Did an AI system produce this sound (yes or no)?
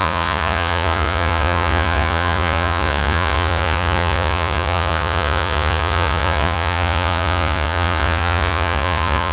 yes